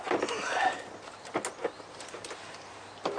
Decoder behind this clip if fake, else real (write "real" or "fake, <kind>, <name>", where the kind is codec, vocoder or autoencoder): real